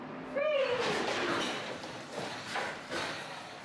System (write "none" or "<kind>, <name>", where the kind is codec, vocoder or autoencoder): vocoder, BigVGAN v2